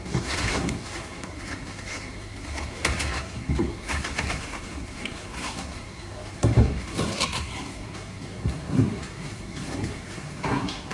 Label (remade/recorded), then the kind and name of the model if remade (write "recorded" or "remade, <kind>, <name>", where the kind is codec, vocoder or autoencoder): remade, codec, SNAC